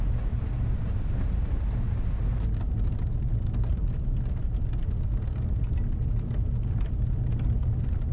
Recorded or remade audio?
recorded